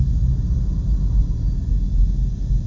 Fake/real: real